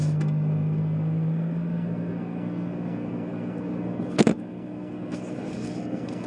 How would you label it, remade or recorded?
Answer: remade